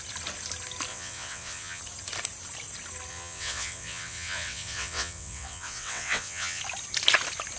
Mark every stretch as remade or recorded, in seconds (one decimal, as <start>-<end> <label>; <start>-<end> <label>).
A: 0.0-0.9 recorded; 0.9-1.8 remade; 1.8-3.1 recorded; 3.1-6.6 remade; 6.6-7.6 recorded